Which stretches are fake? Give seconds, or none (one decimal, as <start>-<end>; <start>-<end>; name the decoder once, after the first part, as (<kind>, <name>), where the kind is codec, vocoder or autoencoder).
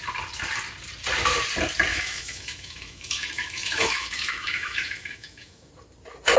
1.9-5.7 (autoencoder, DAC-VAE)